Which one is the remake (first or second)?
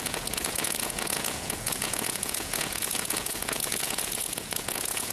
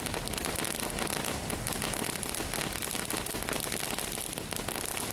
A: first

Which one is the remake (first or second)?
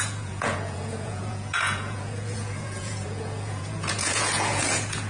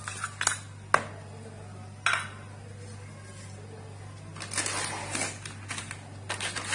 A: first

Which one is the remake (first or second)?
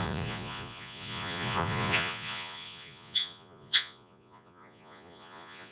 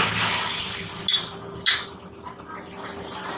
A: first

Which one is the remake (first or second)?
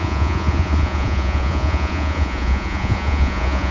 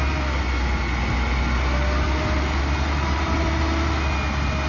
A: first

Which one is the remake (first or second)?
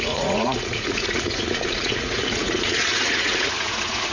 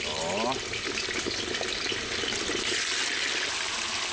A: first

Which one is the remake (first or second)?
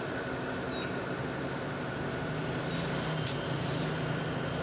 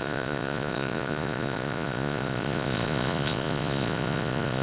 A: second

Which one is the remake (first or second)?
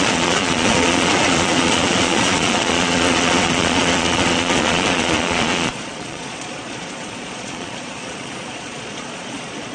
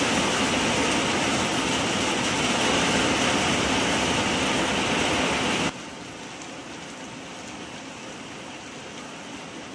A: first